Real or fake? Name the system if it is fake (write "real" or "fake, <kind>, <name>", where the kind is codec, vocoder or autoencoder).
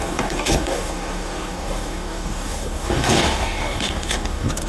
fake, codec, DAC